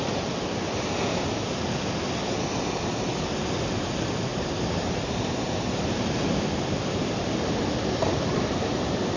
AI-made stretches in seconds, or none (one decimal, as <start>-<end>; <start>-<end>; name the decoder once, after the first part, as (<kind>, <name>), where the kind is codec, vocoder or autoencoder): 4.3-7.2 (vocoder, BigVGAN v2)